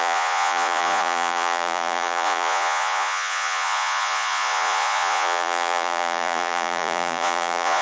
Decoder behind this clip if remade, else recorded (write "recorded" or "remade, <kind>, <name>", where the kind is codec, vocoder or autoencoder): remade, vocoder, Vocos